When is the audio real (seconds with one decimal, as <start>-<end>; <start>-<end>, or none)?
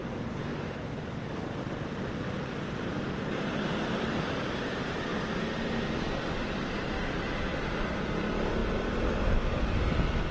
0.0-0.5; 1.3-10.3